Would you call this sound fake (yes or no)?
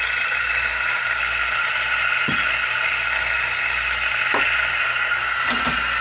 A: no